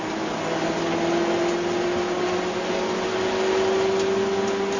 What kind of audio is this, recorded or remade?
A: recorded